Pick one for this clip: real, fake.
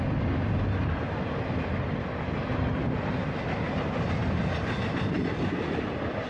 real